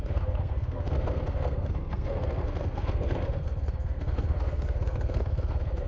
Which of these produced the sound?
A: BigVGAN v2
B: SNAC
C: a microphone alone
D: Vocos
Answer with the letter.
B